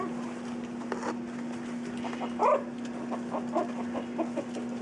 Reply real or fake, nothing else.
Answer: real